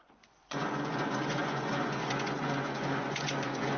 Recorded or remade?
remade